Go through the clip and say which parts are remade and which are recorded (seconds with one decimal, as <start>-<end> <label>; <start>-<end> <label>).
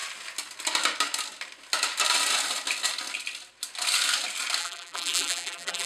0.0-4.6 recorded; 4.6-5.9 remade